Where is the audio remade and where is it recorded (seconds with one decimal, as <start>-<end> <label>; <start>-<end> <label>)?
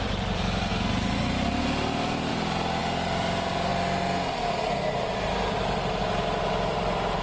0.0-0.7 remade; 0.7-1.6 recorded; 1.6-3.7 remade; 3.7-6.0 recorded; 6.0-7.2 remade